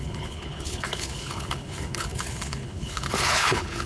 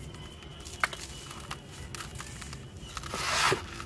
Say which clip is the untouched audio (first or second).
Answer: second